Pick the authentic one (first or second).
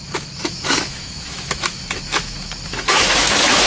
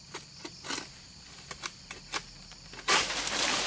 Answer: second